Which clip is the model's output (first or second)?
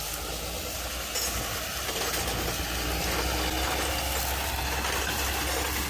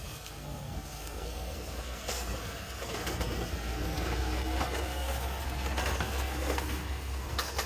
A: second